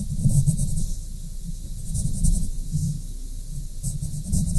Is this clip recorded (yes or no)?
yes